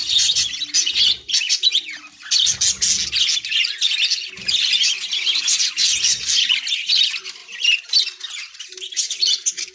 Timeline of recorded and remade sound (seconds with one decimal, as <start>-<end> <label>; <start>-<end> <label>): 0.0-4.4 recorded; 4.4-5.6 remade; 5.6-6.7 recorded; 6.7-9.7 remade